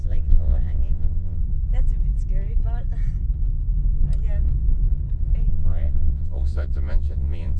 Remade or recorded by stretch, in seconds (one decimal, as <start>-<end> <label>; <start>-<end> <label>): 0.0-1.4 remade; 1.4-5.5 recorded; 5.5-7.6 remade